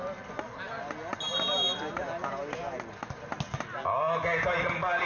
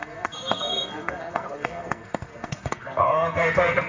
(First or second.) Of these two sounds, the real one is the first